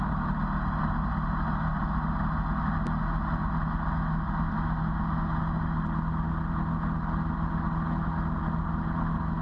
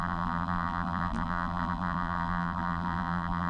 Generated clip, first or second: second